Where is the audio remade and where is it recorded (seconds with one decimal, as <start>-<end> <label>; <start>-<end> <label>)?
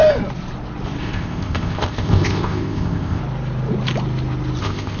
0.0-1.0 recorded; 1.0-3.2 remade; 3.2-4.6 recorded; 4.6-5.0 remade